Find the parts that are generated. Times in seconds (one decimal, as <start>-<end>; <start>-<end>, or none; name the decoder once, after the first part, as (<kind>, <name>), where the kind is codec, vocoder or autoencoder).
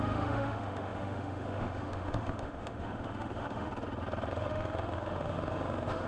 0.0-3.7 (autoencoder, DAC-VAE); 4.3-6.1